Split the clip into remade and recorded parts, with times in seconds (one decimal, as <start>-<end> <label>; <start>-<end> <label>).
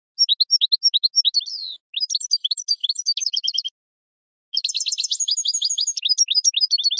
0.0-7.0 recorded